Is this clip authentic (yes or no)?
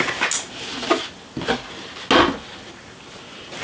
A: yes